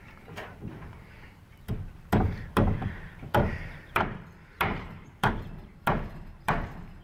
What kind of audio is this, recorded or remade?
remade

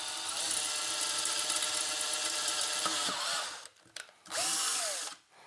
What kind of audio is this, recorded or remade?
recorded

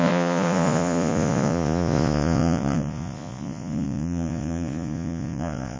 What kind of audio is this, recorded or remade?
remade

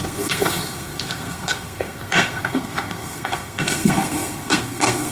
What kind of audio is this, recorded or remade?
remade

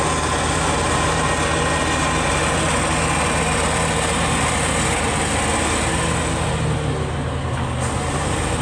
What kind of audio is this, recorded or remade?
recorded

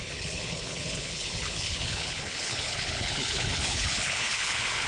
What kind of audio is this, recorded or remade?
remade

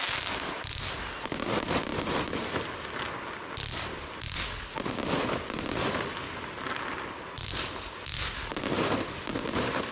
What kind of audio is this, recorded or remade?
recorded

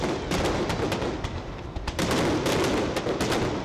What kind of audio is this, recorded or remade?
recorded